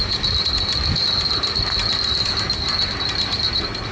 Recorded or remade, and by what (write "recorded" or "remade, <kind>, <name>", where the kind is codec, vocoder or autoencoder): recorded